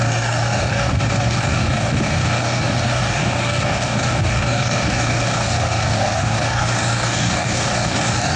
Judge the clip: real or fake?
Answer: fake